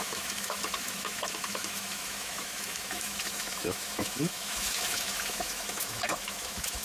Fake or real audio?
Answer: fake